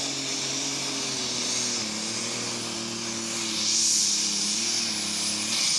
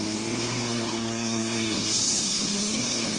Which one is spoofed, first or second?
second